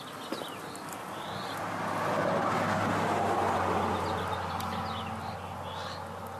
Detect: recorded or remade recorded